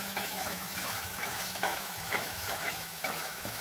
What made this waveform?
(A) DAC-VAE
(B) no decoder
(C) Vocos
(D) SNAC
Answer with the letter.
A